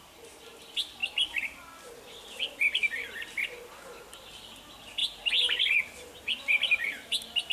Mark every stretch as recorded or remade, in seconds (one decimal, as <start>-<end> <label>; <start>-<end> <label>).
0.0-7.5 recorded